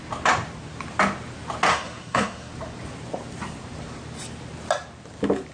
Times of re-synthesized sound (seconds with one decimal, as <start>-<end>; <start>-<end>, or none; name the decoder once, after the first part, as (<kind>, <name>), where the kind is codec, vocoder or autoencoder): 1.7-2.5 (codec, SNAC)